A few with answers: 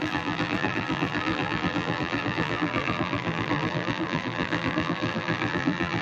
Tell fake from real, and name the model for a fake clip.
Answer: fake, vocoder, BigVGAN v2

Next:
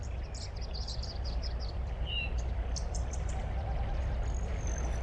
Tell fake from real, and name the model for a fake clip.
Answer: fake, vocoder, BigVGAN v2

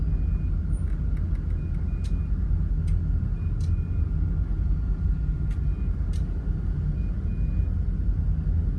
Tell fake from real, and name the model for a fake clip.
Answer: real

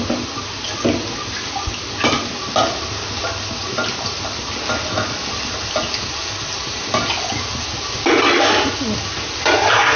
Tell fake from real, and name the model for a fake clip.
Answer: real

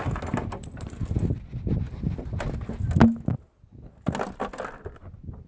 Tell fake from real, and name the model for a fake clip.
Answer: real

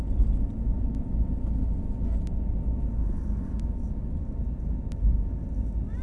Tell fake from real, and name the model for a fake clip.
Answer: real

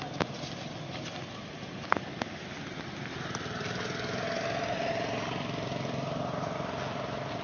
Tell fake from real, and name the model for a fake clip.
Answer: real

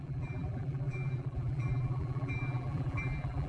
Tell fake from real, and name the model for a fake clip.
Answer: fake, vocoder, BigVGAN v2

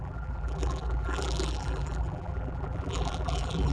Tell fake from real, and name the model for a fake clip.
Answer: fake, vocoder, BigVGAN v2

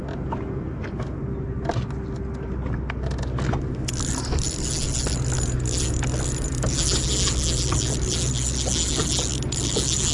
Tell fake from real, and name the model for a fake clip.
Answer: real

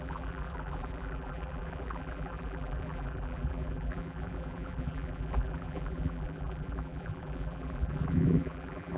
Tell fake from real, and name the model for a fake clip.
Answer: fake, vocoder, BigVGAN v2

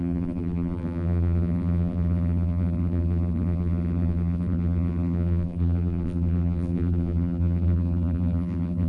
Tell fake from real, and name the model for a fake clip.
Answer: fake, vocoder, BigVGAN v2